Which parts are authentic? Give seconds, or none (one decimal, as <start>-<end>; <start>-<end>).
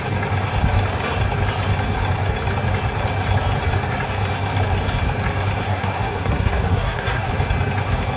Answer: 0.0-5.6; 7.3-8.2